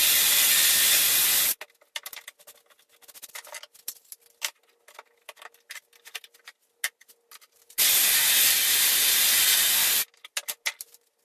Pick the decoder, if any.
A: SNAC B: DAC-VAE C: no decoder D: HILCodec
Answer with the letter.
C